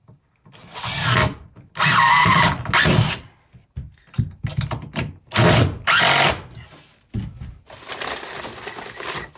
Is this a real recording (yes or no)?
yes